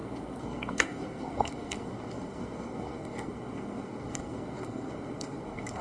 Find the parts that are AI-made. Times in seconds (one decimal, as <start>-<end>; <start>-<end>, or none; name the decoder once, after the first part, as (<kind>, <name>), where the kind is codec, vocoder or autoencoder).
0.0-5.8 (codec, SNAC)